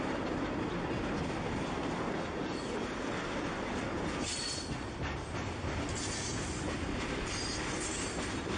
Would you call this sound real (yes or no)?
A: yes